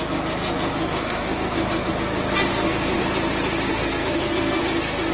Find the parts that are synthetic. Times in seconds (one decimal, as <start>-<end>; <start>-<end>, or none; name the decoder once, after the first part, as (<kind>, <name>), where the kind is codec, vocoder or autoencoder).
0.7-1.9 (codec, SNAC); 2.5-3.0; 3.7-4.6